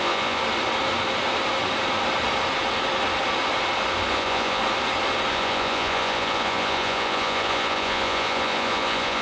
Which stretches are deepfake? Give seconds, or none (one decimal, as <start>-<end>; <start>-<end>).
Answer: 0.0-0.4; 4.1-4.6; 5.3-9.2